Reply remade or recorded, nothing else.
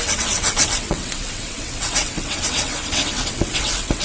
remade